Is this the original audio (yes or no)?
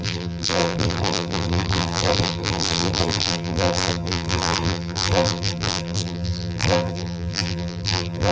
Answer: no